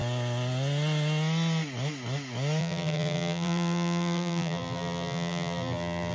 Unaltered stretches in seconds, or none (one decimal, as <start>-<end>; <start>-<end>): 0.0-2.6